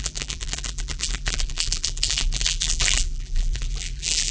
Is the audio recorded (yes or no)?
no